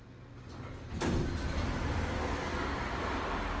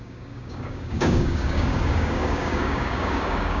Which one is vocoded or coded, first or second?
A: second